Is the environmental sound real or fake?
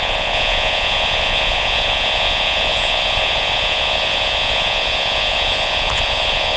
fake